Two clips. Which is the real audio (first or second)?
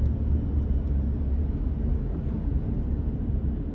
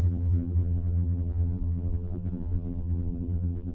first